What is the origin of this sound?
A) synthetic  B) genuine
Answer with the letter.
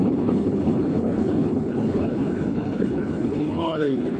A